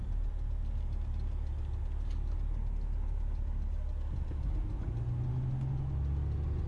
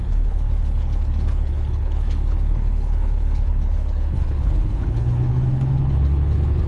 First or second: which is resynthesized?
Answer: second